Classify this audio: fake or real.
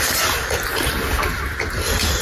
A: real